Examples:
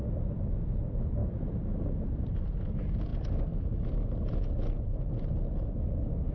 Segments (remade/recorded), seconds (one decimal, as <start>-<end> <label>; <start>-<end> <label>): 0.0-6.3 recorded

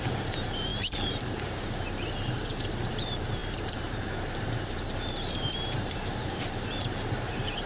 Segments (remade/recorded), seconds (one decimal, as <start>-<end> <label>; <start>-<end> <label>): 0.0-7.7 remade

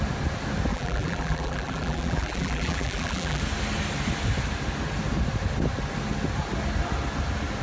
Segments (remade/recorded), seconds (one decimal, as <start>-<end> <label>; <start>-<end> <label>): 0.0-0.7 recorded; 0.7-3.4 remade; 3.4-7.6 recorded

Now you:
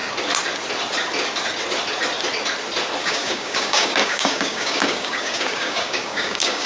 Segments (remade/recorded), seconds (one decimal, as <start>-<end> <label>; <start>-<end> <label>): 0.0-3.0 recorded; 3.0-6.7 remade

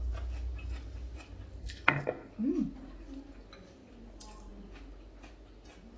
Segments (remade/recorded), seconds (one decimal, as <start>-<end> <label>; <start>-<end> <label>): 0.0-1.6 recorded; 1.6-2.3 remade; 2.3-6.0 recorded